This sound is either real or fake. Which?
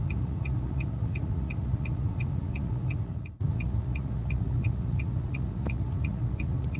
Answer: fake